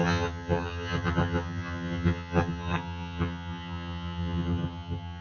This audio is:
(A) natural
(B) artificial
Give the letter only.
B